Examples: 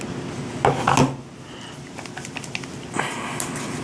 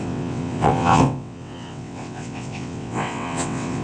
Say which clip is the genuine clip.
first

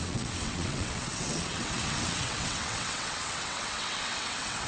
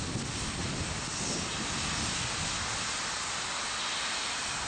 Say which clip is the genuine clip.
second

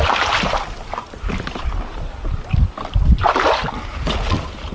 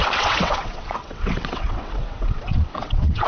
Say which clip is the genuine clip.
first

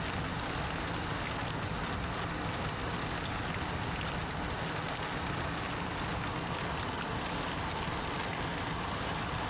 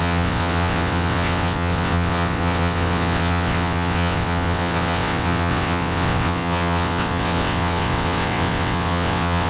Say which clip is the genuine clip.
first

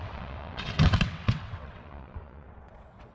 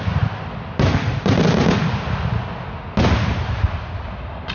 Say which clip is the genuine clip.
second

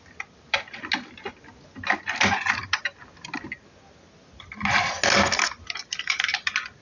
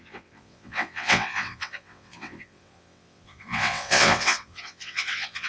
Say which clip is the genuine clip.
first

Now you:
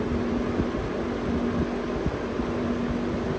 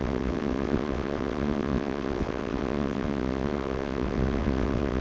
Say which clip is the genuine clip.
first